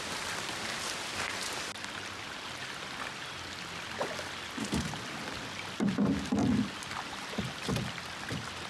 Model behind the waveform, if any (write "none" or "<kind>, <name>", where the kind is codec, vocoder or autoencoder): none